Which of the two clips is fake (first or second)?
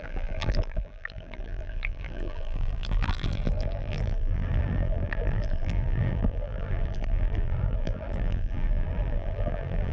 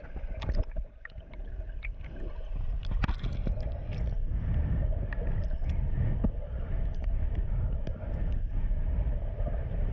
first